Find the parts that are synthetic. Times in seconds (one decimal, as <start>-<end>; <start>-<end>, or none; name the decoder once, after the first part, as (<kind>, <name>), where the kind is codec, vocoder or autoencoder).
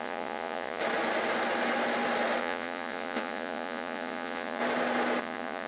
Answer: 0.0-0.8 (vocoder, Vocos); 2.4-4.6; 5.2-5.7